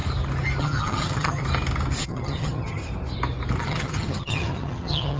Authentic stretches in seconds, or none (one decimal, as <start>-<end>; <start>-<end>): 0.0-0.6; 1.4-2.0; 2.8-3.6